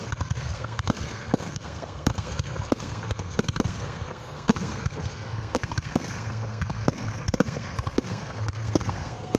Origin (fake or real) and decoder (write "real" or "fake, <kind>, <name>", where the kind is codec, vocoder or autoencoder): fake, codec, SNAC